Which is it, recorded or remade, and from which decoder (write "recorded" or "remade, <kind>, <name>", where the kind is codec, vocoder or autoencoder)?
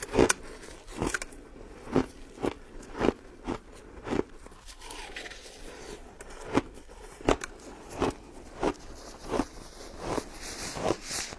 recorded